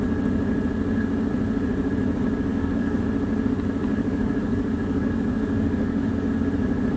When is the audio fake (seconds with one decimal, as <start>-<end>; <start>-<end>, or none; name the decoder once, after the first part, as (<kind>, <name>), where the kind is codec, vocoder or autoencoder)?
2.5-3.0 (codec, DAC); 3.8-6.1